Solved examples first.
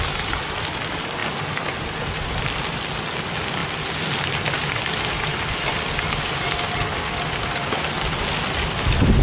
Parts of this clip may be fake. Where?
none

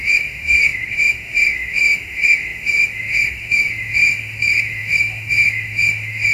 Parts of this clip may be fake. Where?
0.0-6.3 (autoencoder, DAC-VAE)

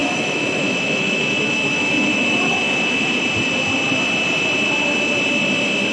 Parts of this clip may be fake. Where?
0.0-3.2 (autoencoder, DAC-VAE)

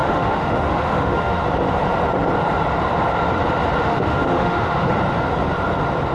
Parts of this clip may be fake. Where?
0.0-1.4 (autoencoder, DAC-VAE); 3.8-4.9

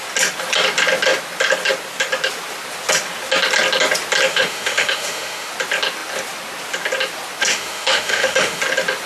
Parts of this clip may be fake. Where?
4.3-5.5 (autoencoder, DAC-VAE); 7.5-8.6

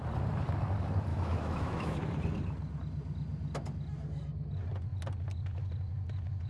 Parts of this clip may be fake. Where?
1.1-2.0 (autoencoder, DAC-VAE)

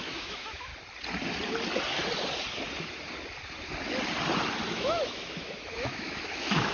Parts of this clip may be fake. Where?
0.0-0.7 (autoencoder, DAC-VAE); 4.7-6.7

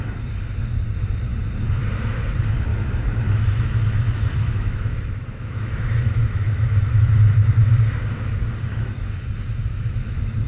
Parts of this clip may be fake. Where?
2.7-7.1 (autoencoder, DAC-VAE); 8.7-9.2; 9.7-10.5